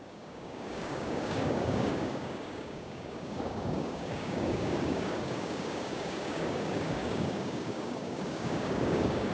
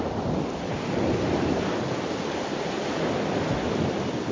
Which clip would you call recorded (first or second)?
second